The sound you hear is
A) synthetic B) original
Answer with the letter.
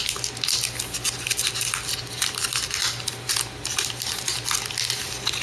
B